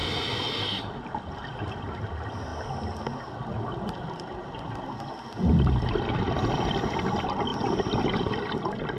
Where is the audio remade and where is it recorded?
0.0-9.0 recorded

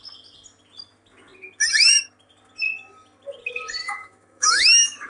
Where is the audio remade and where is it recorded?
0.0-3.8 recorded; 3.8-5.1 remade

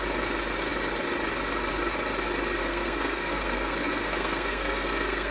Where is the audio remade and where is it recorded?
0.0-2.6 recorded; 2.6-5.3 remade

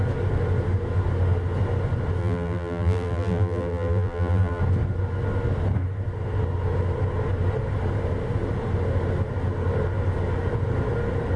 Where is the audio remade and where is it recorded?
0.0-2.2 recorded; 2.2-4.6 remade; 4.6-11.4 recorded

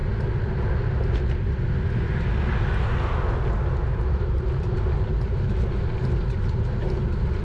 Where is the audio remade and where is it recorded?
0.0-4.1 recorded; 4.1-7.4 remade

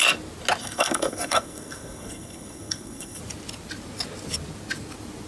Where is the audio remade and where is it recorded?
0.0-0.6 recorded; 0.6-3.2 remade; 3.2-5.3 recorded

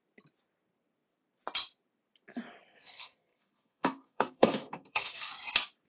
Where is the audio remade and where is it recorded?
0.0-2.7 recorded; 2.7-5.3 remade; 5.3-5.9 recorded

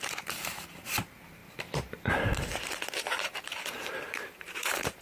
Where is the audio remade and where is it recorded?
0.0-1.4 remade; 1.4-2.6 recorded; 2.6-5.0 remade